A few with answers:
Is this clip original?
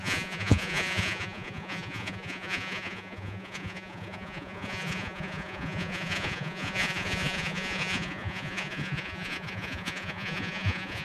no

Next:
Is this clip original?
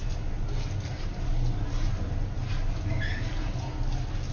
yes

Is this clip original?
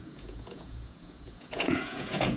no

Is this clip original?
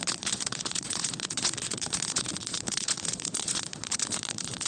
no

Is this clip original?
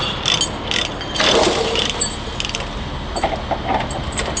yes